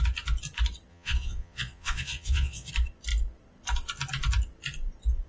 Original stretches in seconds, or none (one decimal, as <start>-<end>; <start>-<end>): 0.0-0.9; 2.7-5.3